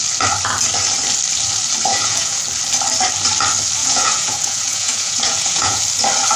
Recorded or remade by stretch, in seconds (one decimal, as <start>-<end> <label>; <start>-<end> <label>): 0.0-1.9 recorded; 1.9-2.4 remade; 2.4-3.8 recorded; 3.8-5.8 remade; 5.8-6.4 recorded